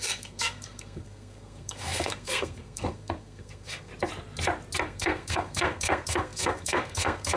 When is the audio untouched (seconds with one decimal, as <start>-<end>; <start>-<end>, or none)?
3.9-4.8